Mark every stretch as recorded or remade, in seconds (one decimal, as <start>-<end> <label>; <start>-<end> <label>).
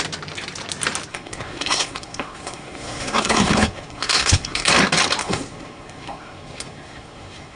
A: 0.0-1.1 recorded; 1.1-4.7 remade; 4.7-5.2 recorded; 5.2-7.6 remade